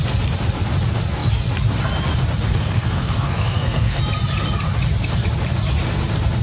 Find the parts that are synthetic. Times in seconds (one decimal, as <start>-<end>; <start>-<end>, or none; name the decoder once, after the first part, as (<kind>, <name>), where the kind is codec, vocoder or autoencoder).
2.5-4.0 (codec, SNAC)